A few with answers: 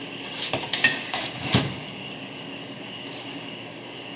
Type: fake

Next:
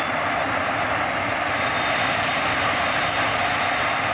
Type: real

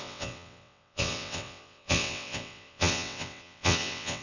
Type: fake